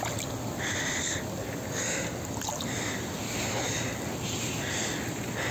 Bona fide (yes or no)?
yes